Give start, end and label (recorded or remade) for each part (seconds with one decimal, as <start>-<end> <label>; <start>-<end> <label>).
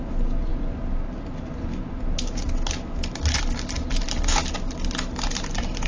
0.0-5.9 recorded